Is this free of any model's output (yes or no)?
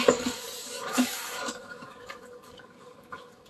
no